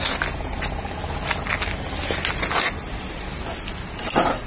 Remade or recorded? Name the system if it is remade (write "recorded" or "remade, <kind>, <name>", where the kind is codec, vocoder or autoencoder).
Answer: recorded